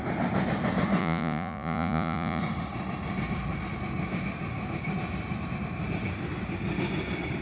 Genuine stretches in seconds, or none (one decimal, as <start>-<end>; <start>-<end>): 0.0-1.0; 2.4-7.4